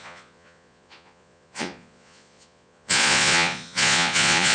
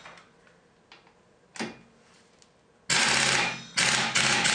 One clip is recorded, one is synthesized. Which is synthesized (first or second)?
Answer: first